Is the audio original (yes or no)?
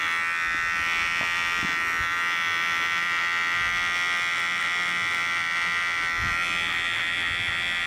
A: yes